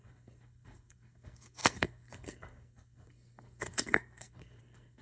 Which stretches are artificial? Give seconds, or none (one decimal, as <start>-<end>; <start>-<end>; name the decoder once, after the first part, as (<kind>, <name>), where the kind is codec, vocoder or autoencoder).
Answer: 0.0-5.0 (codec, SNAC)